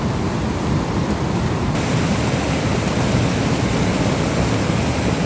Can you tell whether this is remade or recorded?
recorded